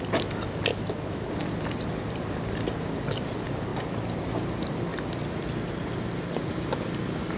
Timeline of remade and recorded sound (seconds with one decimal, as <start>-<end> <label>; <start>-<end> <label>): 0.0-0.7 recorded; 0.7-1.3 remade; 1.3-7.4 recorded